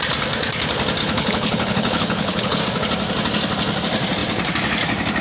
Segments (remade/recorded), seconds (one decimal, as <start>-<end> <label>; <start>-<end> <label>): 0.0-1.0 recorded; 1.0-2.6 remade; 2.6-5.2 recorded